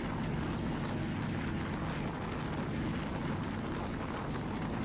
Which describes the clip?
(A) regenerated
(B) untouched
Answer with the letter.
B